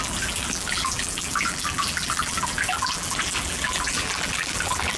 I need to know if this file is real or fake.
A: fake